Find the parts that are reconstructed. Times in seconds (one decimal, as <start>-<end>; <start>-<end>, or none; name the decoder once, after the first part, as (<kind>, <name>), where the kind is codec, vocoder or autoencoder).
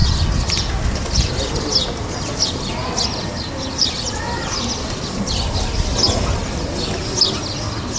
0.0-0.7 (vocoder, BigVGAN v2)